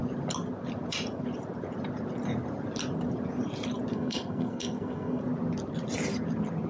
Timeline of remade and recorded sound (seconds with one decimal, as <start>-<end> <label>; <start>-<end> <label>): 0.0-3.9 recorded; 3.9-5.2 remade; 5.2-6.7 recorded